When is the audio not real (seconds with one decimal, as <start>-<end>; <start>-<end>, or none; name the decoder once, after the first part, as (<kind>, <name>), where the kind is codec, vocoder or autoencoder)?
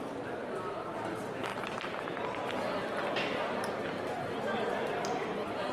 1.5-3.7 (vocoder, BigVGAN v2)